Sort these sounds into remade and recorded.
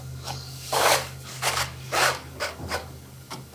remade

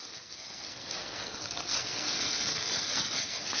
remade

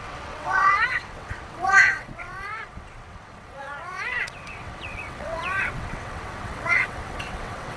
remade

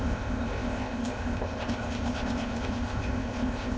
remade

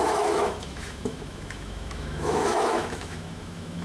remade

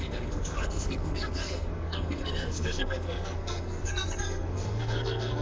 remade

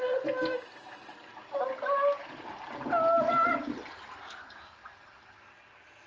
recorded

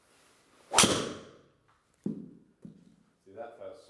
recorded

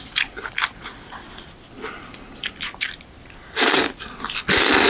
recorded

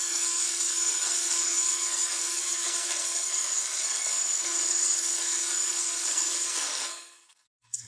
remade